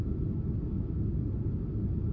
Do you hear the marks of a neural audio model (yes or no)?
no